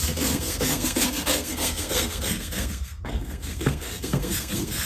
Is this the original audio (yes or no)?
no